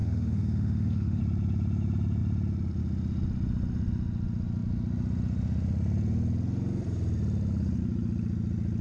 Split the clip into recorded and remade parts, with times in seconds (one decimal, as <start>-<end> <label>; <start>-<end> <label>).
0.0-1.2 remade; 1.2-8.8 recorded